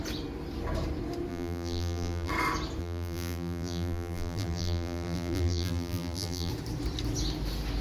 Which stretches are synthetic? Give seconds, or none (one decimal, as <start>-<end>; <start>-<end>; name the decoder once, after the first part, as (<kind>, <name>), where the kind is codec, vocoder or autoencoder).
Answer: 1.3-2.3 (vocoder, BigVGAN v2); 2.8-6.5